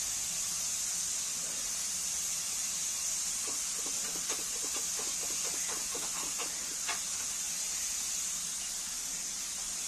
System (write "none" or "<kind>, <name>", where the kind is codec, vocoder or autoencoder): none